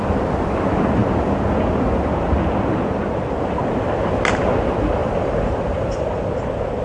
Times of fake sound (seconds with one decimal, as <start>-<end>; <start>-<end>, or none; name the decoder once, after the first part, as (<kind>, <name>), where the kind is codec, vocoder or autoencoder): 5.0-6.3 (vocoder, BigVGAN v2)